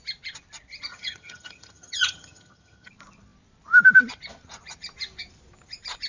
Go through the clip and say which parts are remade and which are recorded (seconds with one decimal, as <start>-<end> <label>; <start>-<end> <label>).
0.0-0.9 recorded; 0.9-2.9 remade; 2.9-6.1 recorded